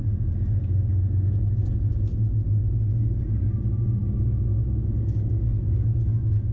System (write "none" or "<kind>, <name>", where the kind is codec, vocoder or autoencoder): none